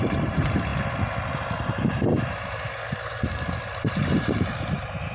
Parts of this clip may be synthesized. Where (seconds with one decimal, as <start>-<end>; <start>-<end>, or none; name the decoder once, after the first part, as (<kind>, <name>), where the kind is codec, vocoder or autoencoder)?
0.0-0.7 (vocoder, BigVGAN v2); 1.6-5.1